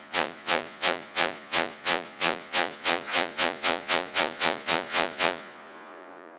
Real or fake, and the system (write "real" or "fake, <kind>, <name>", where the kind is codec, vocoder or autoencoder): fake, vocoder, Vocos